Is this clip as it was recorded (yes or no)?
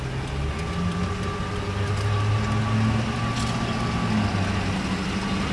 yes